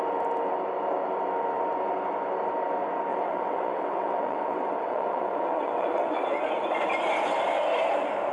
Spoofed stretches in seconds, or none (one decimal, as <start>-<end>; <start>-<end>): 3.1-6.4